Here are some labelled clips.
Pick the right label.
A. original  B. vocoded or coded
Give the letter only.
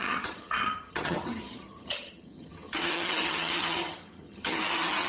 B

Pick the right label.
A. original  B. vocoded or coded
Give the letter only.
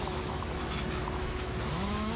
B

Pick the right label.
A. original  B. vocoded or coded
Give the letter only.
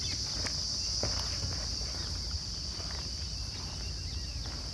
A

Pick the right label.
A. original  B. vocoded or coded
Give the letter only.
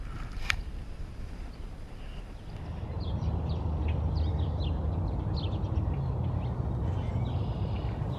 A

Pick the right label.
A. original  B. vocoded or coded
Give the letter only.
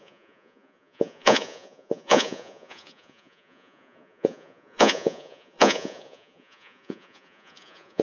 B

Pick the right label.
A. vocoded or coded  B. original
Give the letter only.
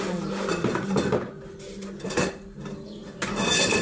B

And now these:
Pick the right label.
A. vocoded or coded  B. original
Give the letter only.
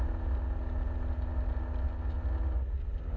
B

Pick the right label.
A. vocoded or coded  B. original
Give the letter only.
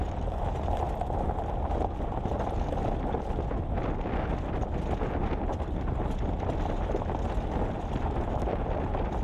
B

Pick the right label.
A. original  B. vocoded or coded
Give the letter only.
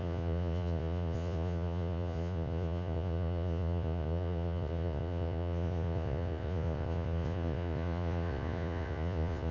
B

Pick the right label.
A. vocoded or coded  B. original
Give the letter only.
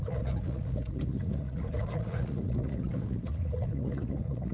A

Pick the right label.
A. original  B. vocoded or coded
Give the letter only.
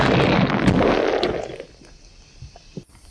A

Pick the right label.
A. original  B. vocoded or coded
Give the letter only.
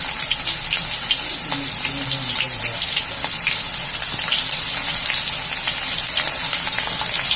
A